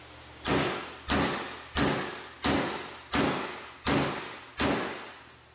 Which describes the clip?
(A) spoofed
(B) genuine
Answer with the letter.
B